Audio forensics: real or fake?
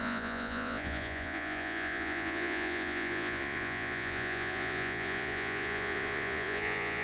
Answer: fake